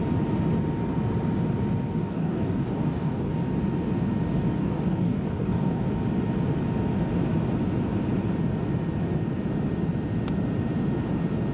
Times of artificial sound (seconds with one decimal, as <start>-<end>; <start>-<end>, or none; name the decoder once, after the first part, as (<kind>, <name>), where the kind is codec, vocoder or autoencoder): 2.0-3.3 (codec, DAC); 4.6-5.9